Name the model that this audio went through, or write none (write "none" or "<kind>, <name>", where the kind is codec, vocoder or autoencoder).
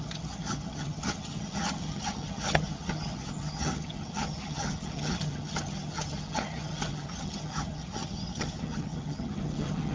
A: vocoder, HiFi-GAN